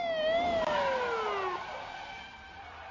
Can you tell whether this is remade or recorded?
recorded